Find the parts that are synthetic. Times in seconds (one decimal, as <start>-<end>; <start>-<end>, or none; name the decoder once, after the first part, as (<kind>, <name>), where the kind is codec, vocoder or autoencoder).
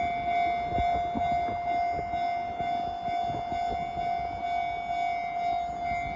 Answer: none